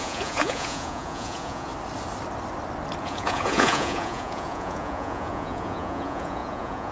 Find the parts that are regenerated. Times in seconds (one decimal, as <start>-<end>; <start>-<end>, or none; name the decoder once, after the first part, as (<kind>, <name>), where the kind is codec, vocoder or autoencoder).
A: 0.0-1.7 (vocoder, Vocos); 3.0-6.9